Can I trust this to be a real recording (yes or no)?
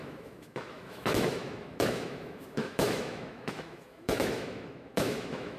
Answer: no